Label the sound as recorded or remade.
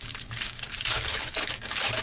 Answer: remade